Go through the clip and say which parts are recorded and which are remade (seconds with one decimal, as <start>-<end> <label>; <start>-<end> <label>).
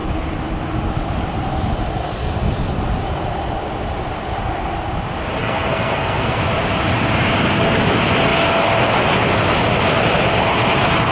0.0-5.4 recorded; 5.4-6.4 remade; 6.4-11.1 recorded